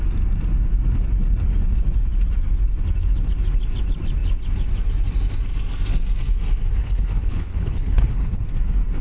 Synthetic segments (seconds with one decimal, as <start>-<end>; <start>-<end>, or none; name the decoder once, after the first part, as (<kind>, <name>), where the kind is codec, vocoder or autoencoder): 6.8-8.4 (codec, HILCodec)